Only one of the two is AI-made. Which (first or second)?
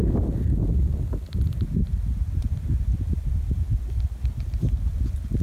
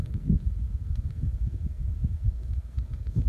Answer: second